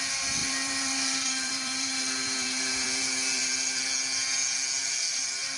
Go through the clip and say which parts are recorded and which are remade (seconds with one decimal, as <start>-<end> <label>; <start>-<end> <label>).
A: 0.0-0.4 recorded; 0.4-3.8 remade; 3.8-4.8 recorded; 4.8-5.6 remade